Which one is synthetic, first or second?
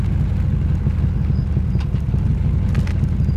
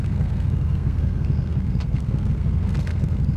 second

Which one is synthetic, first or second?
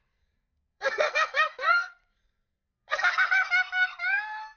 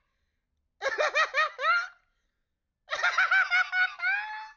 first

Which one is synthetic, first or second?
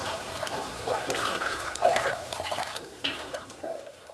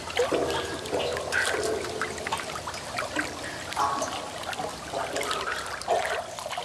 first